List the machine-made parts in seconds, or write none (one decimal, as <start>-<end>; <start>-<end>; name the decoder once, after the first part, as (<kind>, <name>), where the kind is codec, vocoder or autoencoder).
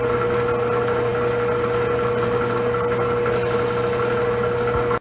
none